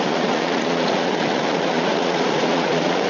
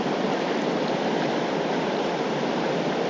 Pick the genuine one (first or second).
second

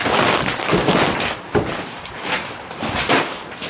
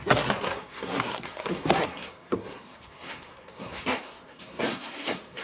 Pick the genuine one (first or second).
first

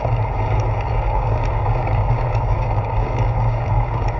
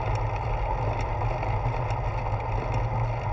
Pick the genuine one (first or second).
second